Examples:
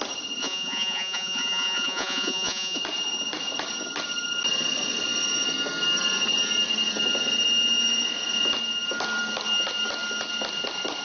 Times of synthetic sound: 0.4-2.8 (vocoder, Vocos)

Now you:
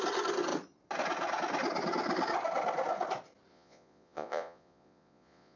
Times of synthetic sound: 3.5-5.6 (vocoder, Vocos)

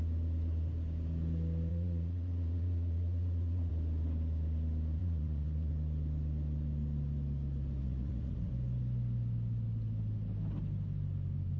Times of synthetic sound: 1.7-3.7 (vocoder, Vocos); 5.0-5.7; 7.8-8.5

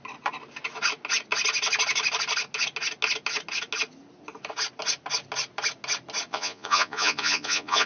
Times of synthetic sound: 6.3-7.9 (vocoder, Vocos)